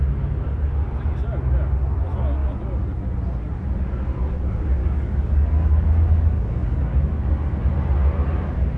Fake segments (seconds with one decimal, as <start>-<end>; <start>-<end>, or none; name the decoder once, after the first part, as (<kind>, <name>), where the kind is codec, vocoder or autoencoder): 4.8-7.3 (codec, DAC)